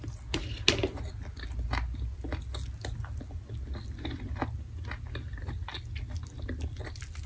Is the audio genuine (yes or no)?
yes